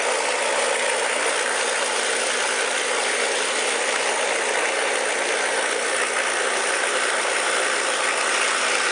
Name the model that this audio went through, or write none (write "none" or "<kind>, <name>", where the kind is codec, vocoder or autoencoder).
none